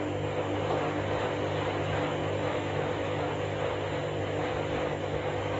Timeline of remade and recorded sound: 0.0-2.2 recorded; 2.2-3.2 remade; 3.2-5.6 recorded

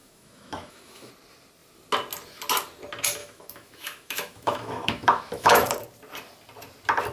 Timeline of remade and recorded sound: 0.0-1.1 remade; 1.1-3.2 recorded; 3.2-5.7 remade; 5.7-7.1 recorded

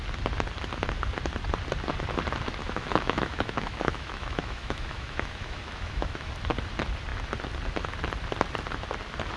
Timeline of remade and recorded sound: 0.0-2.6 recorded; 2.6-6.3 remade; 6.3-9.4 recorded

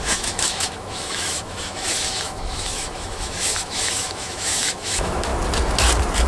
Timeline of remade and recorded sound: 0.0-5.3 remade; 5.3-6.3 recorded

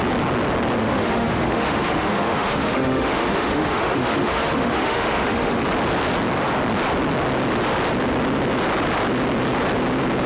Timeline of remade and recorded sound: 0.0-0.8 recorded; 0.8-5.6 remade; 5.6-10.3 recorded

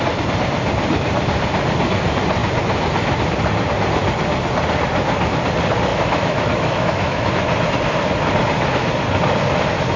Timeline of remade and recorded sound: 0.0-5.9 recorded; 5.9-7.3 remade; 7.3-10.0 recorded

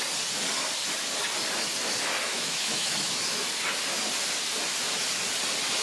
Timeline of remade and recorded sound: 0.0-2.3 recorded; 2.3-3.2 remade; 3.2-5.8 recorded